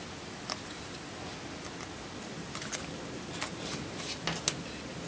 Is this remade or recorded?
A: recorded